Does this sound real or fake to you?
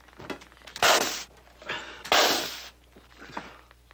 real